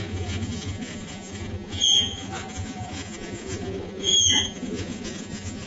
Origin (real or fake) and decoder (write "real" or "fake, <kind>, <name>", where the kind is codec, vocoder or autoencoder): fake, vocoder, Vocos